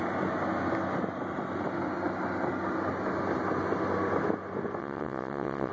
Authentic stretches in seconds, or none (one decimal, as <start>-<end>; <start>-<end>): 0.0-4.8